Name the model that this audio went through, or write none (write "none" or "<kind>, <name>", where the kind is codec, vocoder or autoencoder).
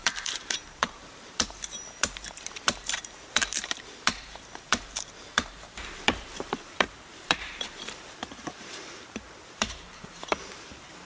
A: vocoder, BigVGAN v2